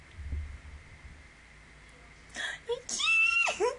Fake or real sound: real